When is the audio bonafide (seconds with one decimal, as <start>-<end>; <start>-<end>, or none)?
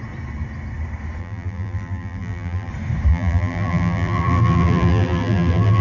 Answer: 0.0-1.2; 2.7-3.1